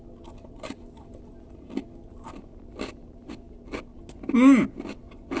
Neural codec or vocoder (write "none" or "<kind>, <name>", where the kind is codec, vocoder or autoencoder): none